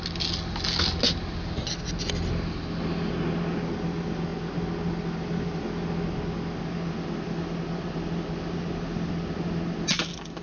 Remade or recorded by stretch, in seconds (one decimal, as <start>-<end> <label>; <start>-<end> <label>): 0.0-10.4 recorded